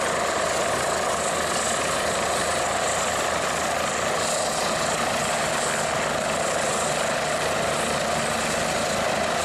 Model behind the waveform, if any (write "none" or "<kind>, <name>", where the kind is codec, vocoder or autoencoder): none